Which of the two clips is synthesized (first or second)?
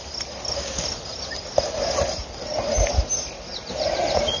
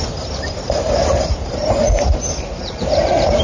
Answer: second